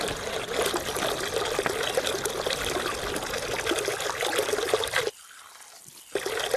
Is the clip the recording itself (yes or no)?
yes